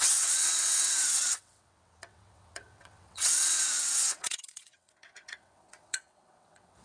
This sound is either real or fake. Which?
fake